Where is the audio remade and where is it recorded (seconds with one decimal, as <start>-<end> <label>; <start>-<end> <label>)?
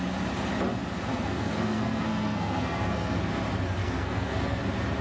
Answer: 0.0-1.1 recorded; 1.1-3.3 remade; 3.3-3.8 recorded; 3.8-4.6 remade; 4.6-5.0 recorded